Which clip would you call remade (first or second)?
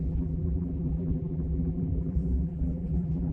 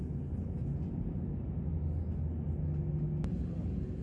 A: first